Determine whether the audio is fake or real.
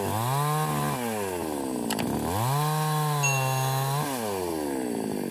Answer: real